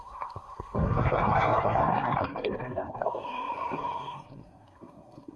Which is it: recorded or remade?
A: remade